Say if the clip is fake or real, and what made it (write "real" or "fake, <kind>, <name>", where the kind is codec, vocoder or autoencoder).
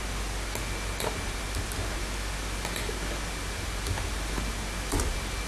real